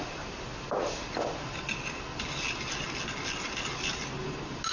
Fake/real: real